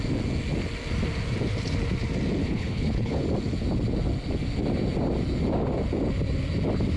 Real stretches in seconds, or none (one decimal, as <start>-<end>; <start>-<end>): 0.0-2.4; 3.2-7.0